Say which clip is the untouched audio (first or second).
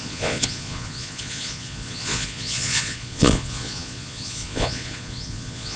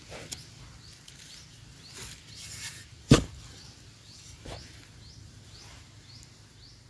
second